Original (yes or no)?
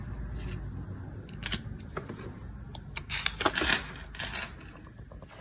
yes